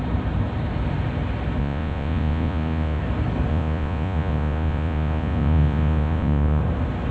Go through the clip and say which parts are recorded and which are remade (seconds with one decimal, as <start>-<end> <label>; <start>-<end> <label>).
0.0-1.6 recorded; 1.6-3.0 remade; 3.0-3.5 recorded; 3.5-6.6 remade; 6.6-7.1 recorded